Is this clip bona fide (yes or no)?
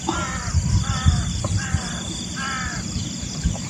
yes